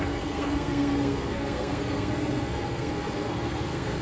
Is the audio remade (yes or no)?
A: yes